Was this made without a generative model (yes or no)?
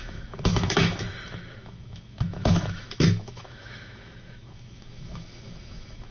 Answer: no